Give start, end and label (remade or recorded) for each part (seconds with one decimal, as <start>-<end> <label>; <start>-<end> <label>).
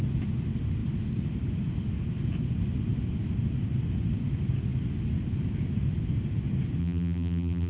0.0-6.8 recorded; 6.8-7.7 remade